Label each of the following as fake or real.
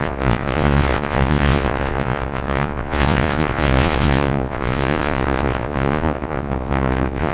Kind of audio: fake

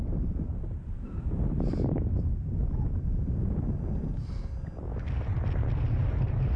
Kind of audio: real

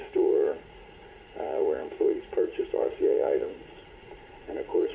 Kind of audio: fake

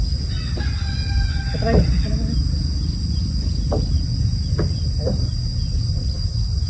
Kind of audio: real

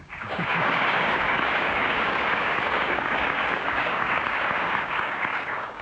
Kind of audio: fake